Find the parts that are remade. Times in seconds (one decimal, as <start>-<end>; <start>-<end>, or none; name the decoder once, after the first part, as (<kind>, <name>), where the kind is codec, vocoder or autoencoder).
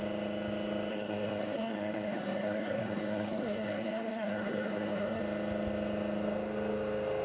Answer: 0.9-5.2 (codec, SNAC)